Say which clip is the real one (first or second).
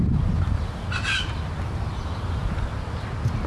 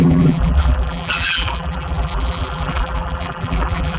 first